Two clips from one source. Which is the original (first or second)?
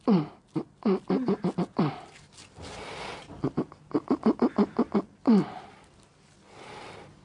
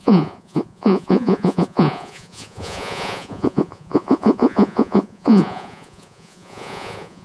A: first